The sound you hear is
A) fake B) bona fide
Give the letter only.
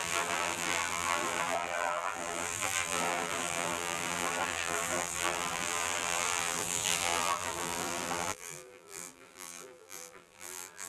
A